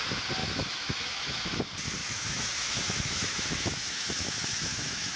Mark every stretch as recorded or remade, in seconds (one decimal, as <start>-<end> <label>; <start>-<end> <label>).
0.0-0.4 recorded; 0.4-1.6 remade; 1.6-2.0 recorded; 2.0-5.2 remade